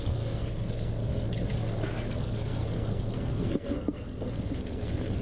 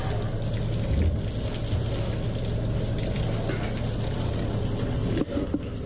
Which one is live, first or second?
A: second